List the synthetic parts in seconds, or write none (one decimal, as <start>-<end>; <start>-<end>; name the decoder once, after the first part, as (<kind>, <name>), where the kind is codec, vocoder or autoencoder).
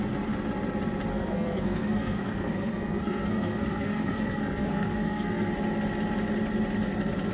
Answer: 1.1-5.5 (codec, SNAC)